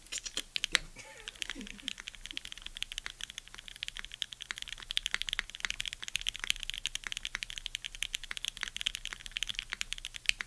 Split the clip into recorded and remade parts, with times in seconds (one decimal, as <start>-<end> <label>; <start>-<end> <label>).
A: 0.0-10.5 recorded